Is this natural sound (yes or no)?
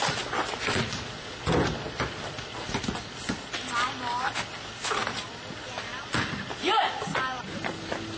yes